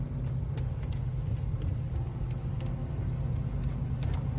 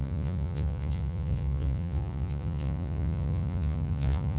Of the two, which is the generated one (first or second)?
second